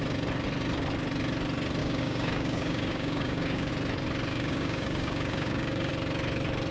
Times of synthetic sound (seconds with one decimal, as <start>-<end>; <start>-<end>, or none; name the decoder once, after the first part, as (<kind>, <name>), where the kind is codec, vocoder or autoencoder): 1.8-3.7 (codec, DAC); 4.3-5.9